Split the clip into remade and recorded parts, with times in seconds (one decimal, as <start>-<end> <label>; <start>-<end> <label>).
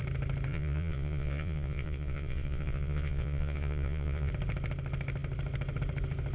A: 0.0-0.5 recorded; 0.5-4.3 remade; 4.3-6.3 recorded